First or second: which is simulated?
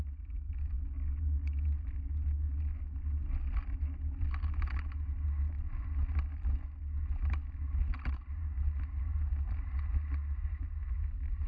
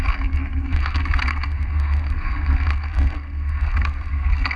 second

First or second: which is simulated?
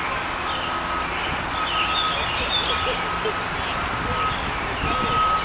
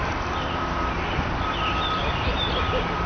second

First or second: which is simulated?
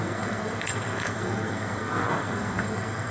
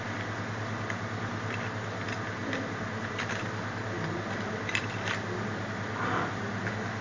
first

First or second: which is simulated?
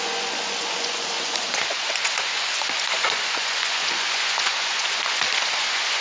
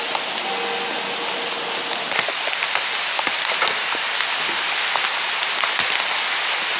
first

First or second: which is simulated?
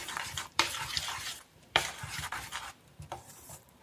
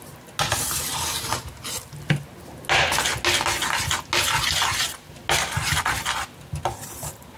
first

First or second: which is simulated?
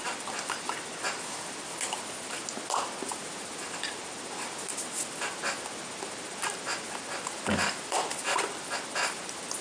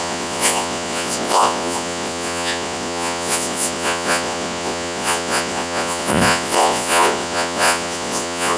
second